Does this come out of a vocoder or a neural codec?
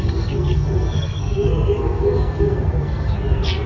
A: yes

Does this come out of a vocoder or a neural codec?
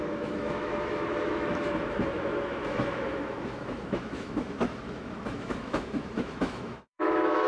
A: yes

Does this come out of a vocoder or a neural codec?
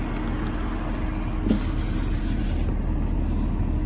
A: no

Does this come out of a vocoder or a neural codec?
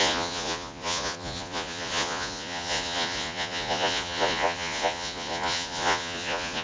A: yes